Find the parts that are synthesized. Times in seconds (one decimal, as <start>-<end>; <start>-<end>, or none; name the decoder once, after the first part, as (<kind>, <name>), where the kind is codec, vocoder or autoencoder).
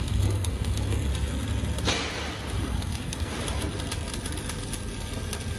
0.0-1.1 (codec, SNAC); 2.6-3.3